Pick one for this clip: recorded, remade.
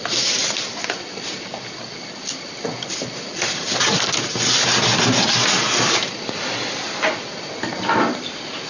recorded